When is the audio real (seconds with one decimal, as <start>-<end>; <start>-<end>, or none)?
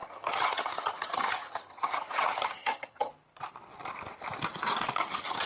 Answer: 3.1-5.0